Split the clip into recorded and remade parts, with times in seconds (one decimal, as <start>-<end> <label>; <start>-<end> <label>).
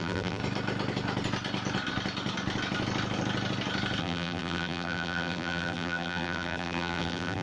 0.0-0.4 remade; 0.4-4.0 recorded; 4.0-7.4 remade